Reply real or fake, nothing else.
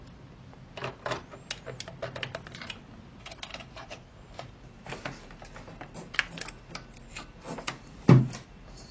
real